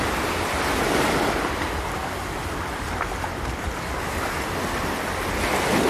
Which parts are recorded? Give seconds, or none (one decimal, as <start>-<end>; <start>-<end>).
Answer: 0.0-2.0; 2.9-5.9